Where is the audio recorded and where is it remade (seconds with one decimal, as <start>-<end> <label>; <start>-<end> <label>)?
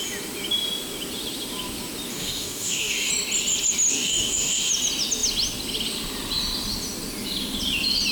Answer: 0.0-2.1 recorded; 2.1-3.1 remade; 3.1-3.9 recorded; 3.9-4.7 remade; 4.7-8.1 recorded